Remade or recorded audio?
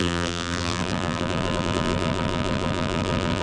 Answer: remade